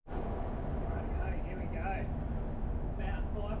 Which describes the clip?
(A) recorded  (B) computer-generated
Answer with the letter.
A